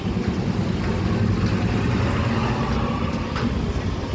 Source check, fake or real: real